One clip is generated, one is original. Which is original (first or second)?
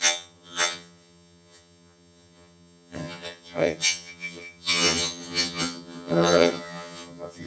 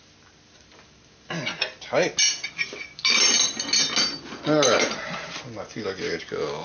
second